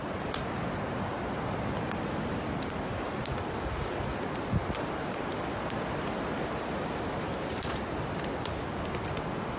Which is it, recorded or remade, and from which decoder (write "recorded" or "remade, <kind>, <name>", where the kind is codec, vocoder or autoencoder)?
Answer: recorded